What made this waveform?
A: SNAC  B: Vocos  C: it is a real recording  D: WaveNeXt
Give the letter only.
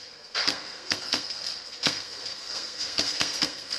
A